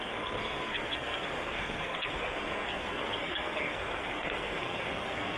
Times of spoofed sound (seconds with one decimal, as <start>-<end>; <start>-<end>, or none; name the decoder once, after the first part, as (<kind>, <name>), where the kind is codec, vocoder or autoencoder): 0.0-5.4 (codec, SNAC)